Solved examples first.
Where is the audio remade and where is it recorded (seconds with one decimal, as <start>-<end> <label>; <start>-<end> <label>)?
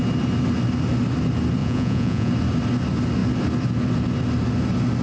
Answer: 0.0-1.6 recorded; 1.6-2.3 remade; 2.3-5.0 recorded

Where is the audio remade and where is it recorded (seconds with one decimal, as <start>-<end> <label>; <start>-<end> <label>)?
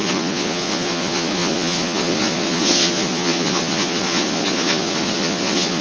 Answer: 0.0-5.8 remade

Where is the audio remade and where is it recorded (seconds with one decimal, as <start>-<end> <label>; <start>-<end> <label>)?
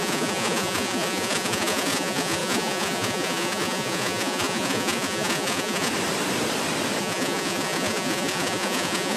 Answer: 0.0-5.9 remade; 5.9-7.0 recorded; 7.0-9.2 remade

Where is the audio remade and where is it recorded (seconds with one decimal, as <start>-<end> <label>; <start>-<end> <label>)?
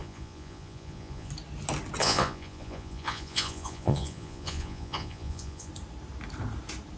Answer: 0.0-1.3 remade; 1.3-2.0 recorded; 2.0-5.7 remade; 5.7-7.0 recorded